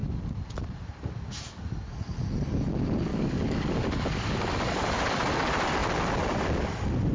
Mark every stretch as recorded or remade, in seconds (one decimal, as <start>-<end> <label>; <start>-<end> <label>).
0.0-3.1 recorded; 3.1-4.8 remade; 4.8-7.1 recorded